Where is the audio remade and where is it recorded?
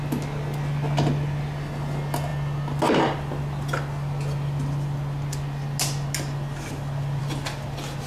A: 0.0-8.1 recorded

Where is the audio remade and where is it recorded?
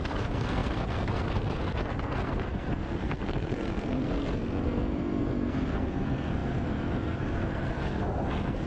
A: 0.0-8.7 remade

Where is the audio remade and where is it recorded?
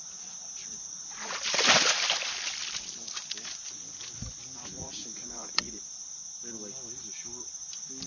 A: 0.0-0.6 recorded; 0.6-1.3 remade; 1.3-4.8 recorded; 4.8-6.1 remade; 6.1-8.1 recorded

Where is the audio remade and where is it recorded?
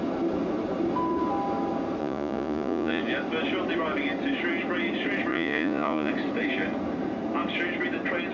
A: 0.0-2.0 recorded; 2.0-3.0 remade; 3.0-5.3 recorded; 5.3-6.1 remade; 6.1-8.3 recorded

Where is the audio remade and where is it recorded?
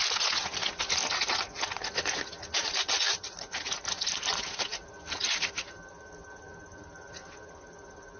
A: 0.0-8.2 recorded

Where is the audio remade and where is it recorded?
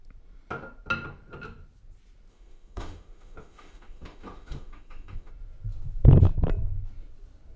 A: 0.0-2.3 recorded; 2.3-5.3 remade; 5.3-7.6 recorded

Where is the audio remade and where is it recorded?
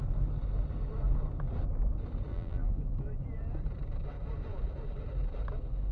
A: 0.0-2.3 recorded; 2.3-2.8 remade; 2.8-5.9 recorded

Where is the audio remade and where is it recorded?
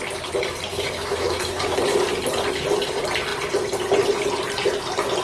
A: 0.0-0.7 recorded; 0.7-1.8 remade; 1.8-5.2 recorded